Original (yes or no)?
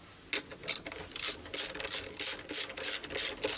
yes